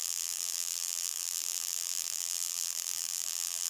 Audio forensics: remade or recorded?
remade